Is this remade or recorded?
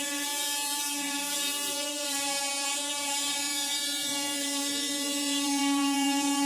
remade